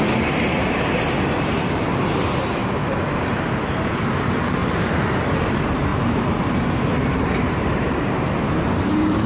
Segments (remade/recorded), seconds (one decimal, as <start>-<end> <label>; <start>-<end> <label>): 0.0-2.6 remade; 2.6-3.7 recorded; 3.7-4.6 remade; 4.6-5.4 recorded; 5.4-5.9 remade; 5.9-7.4 recorded; 7.4-9.3 remade